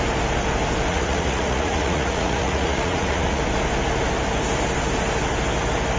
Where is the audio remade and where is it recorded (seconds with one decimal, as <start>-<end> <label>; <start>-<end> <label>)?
0.0-0.9 recorded; 0.9-3.4 remade; 3.4-6.0 recorded